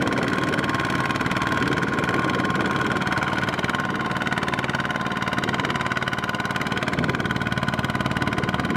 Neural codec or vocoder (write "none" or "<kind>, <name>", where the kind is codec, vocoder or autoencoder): none